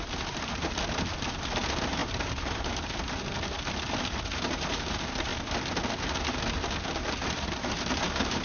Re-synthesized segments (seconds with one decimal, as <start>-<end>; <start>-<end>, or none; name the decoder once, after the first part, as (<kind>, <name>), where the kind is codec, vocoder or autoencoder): 0.0-5.3 (vocoder, BigVGAN v2); 7.0-8.4